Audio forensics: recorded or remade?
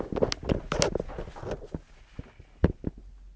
recorded